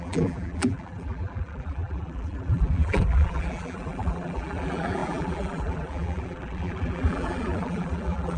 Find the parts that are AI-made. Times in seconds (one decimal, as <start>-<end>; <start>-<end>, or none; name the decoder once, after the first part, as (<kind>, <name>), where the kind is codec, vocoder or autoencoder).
0.0-8.4 (vocoder, BigVGAN v2)